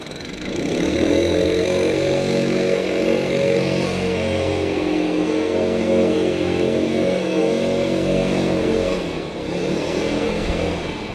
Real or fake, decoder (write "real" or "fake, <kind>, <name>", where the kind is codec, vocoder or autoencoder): fake, codec, SNAC